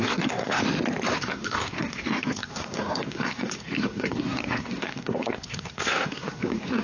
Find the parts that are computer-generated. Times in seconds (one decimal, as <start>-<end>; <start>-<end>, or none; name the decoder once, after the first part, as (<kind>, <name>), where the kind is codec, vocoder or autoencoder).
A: 0.0-0.6 (codec, SNAC); 1.2-6.8